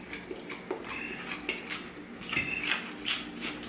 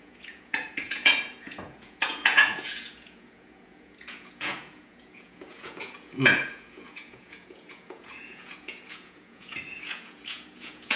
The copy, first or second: second